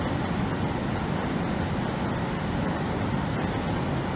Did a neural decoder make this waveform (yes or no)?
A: no